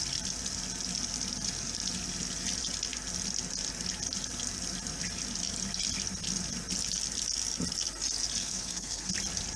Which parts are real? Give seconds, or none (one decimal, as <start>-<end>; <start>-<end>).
0.0-8.4; 9.1-9.6